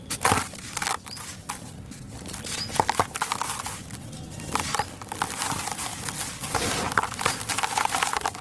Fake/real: real